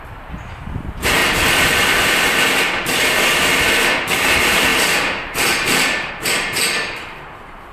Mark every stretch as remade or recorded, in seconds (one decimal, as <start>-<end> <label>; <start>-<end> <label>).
0.0-1.2 remade; 1.2-3.8 recorded; 3.8-7.7 remade